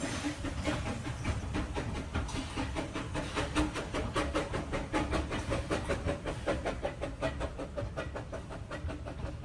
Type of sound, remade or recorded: recorded